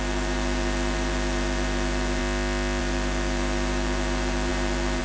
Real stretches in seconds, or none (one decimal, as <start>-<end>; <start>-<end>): 2.2-2.8